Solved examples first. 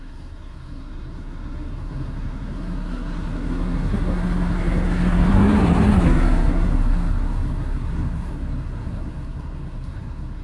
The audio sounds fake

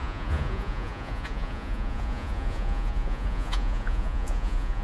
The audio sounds fake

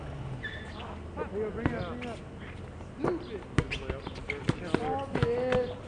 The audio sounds real